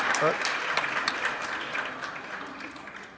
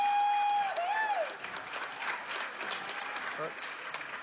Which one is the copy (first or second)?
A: first